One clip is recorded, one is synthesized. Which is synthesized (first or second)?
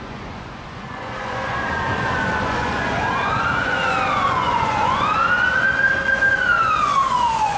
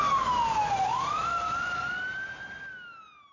first